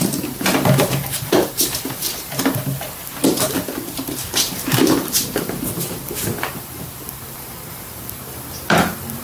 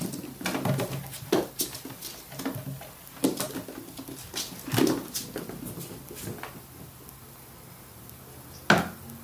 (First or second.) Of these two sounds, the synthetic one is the first